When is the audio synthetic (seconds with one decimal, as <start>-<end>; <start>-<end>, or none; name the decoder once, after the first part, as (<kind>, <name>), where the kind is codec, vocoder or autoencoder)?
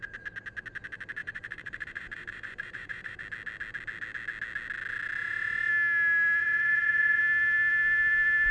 1.2-3.2 (vocoder, Vocos); 6.4-7.2